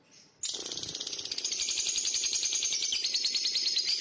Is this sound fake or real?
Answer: real